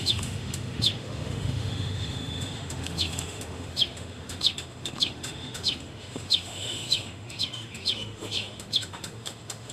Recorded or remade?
remade